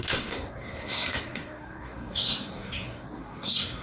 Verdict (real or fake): fake